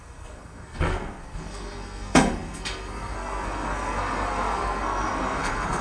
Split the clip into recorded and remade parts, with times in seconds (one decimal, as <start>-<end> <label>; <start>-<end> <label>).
0.0-5.8 remade